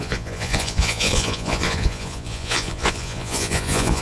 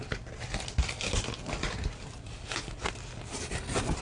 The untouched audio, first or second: second